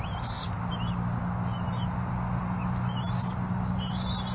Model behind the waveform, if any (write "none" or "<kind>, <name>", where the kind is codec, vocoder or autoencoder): none